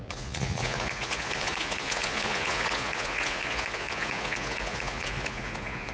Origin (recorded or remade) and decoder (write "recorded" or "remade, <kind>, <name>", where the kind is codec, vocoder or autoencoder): remade, vocoder, Vocos